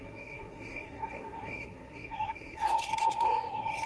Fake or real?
fake